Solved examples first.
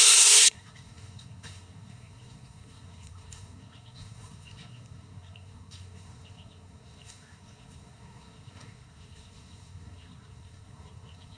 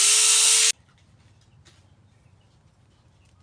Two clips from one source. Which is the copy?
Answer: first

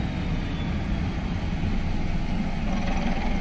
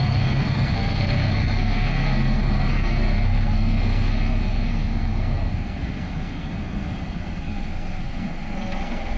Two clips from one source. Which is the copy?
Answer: second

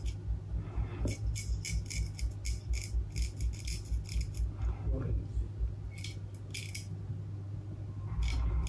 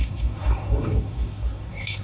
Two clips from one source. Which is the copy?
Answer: second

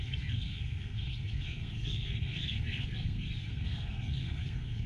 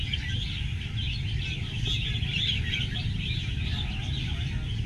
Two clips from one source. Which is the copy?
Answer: first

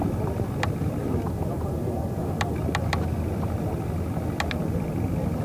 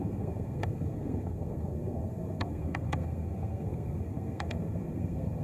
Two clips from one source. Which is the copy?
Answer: second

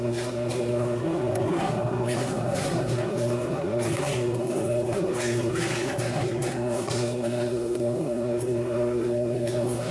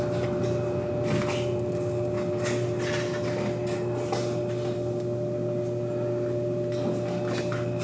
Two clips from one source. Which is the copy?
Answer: first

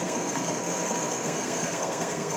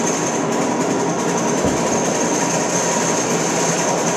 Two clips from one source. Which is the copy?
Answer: first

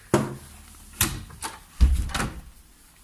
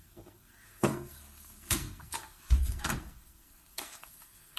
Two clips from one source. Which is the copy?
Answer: second